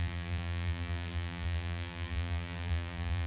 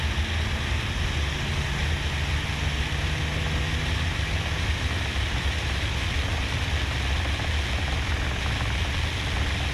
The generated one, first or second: first